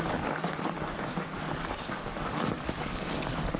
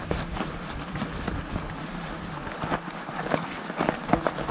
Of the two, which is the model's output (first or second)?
first